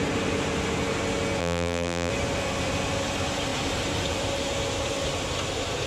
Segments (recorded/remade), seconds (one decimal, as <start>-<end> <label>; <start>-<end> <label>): 0.0-1.4 recorded; 1.4-2.1 remade; 2.1-5.9 recorded